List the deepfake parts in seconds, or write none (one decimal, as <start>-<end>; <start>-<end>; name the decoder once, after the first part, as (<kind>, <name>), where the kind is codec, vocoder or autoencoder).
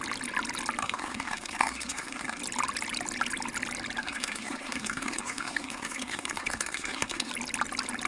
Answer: 0.8-2.4 (codec, SNAC); 4.0-7.3